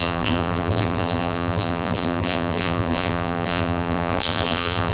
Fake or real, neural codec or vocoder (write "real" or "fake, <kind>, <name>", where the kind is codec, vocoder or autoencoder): fake, vocoder, BigVGAN v2